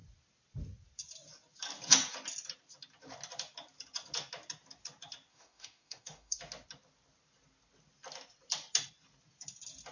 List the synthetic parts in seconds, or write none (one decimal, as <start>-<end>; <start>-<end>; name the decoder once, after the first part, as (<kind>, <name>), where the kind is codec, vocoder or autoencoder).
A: 5.3-6.4 (autoencoder, DAC-VAE)